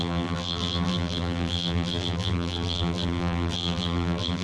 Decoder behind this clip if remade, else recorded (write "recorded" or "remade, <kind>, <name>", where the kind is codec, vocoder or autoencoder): remade, vocoder, BigVGAN v2